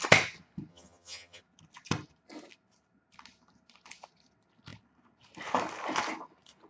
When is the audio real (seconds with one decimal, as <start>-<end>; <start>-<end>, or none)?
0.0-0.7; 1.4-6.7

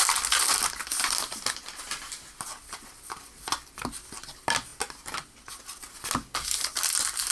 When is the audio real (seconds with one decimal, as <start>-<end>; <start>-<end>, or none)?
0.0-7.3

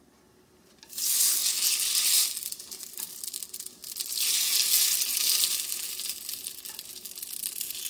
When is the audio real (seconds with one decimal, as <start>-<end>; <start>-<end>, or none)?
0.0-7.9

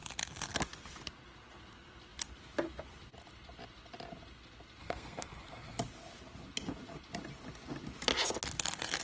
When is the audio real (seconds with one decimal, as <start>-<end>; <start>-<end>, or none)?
0.0-4.8; 5.8-9.0

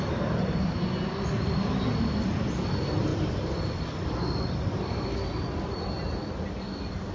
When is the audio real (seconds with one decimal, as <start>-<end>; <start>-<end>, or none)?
0.0-7.1

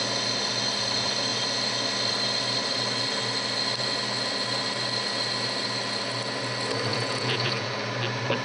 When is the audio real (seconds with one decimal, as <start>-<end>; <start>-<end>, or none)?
0.0-6.9; 7.7-8.4

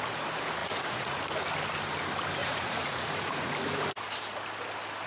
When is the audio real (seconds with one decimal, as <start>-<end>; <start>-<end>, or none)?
0.0-0.6; 1.2-2.4; 3.5-5.1

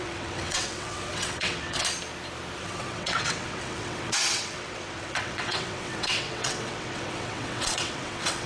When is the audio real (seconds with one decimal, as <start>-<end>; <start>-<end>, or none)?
1.8-2.6